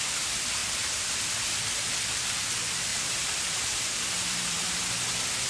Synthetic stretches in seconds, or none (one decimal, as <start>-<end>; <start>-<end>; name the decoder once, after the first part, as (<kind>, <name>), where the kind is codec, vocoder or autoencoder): 2.9-4.8 (vocoder, BigVGAN v2)